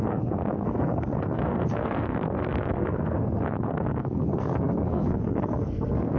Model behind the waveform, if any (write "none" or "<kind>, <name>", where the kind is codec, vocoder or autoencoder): codec, SNAC